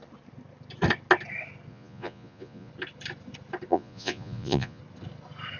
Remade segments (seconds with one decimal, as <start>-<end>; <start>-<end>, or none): 1.7-2.7; 3.7-4.8